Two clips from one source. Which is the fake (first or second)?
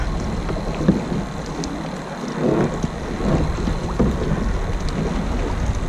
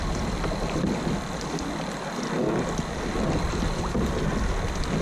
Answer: second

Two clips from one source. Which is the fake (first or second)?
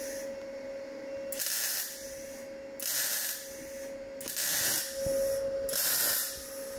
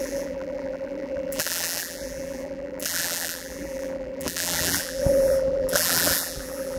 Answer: second